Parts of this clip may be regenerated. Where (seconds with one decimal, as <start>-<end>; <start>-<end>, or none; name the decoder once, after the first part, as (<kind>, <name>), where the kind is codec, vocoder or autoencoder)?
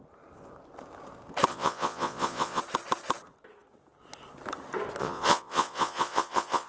1.5-2.6 (vocoder, Vocos); 5.0-6.7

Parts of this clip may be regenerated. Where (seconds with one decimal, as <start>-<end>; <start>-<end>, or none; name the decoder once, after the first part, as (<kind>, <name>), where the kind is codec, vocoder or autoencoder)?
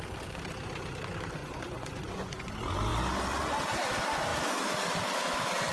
1.4-2.5 (vocoder, Vocos)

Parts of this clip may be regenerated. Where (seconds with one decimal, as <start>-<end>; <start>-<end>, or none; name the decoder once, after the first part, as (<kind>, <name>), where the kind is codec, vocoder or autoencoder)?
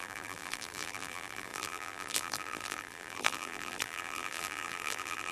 0.0-5.3 (vocoder, BigVGAN v2)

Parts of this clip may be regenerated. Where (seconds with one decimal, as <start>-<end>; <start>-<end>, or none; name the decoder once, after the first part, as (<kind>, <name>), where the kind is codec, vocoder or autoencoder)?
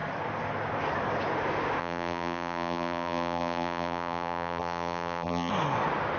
1.8-5.5 (vocoder, BigVGAN v2)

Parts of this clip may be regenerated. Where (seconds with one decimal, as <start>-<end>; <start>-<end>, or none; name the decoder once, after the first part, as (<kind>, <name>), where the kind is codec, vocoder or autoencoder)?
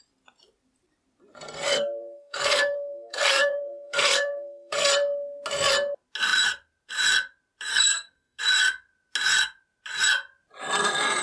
1.3-4.9 (codec, SNAC); 7.7-8.4